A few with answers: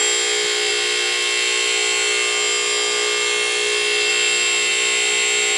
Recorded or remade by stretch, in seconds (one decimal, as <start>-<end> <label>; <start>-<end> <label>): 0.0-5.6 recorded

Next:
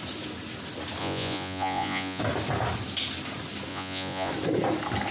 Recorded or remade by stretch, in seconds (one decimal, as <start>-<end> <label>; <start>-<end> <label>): 0.0-1.0 recorded; 1.0-2.2 remade; 2.2-3.7 recorded; 3.7-4.3 remade; 4.3-5.1 recorded

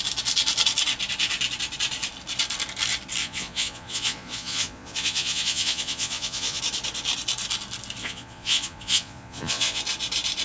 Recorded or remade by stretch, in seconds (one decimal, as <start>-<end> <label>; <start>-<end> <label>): 0.0-3.2 recorded; 3.2-6.6 remade; 6.6-8.0 recorded; 8.0-9.8 remade; 9.8-10.4 recorded

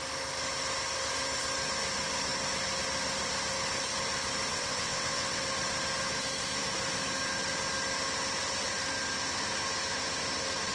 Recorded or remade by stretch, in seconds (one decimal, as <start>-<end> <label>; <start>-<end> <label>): 0.0-4.5 recorded; 4.5-5.4 remade; 5.4-10.7 recorded

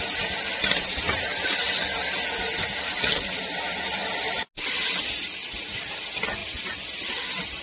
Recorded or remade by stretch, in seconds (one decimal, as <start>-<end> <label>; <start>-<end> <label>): 0.0-7.6 recorded